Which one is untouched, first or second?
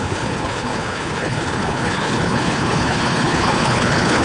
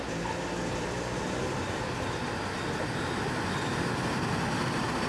second